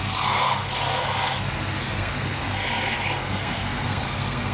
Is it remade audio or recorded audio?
remade